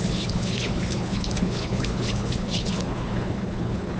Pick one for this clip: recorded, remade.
remade